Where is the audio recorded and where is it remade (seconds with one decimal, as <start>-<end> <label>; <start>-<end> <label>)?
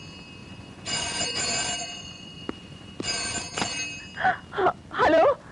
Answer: 0.0-0.4 recorded; 0.4-1.4 remade; 1.4-1.8 recorded; 1.8-2.9 remade; 2.9-5.5 recorded